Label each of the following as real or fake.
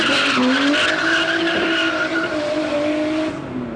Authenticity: real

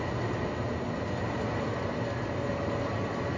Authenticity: real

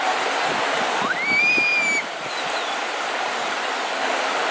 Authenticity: real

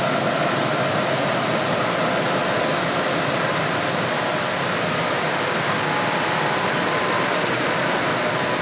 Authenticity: real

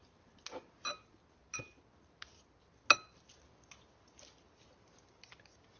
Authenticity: real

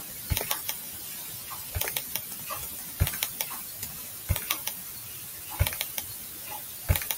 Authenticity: real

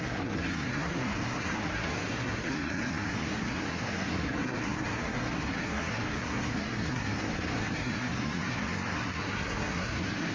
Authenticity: fake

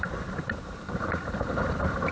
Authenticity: fake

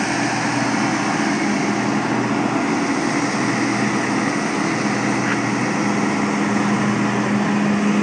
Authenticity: real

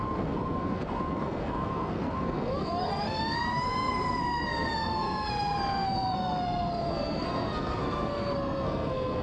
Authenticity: fake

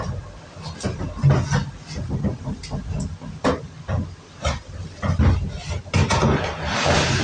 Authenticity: real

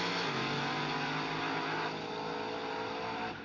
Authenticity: real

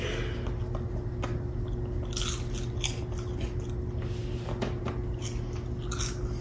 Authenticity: real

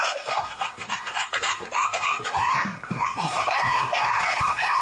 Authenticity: fake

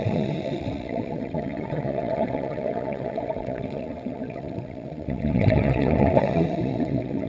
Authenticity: fake